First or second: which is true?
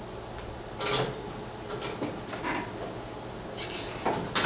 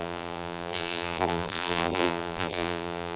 first